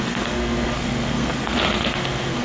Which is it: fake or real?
fake